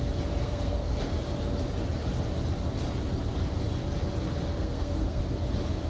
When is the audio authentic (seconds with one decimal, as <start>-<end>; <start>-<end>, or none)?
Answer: 0.0-0.4; 1.0-4.5; 5.2-5.9